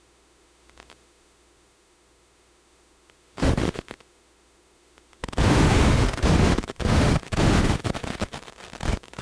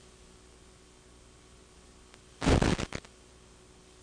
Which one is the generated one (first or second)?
first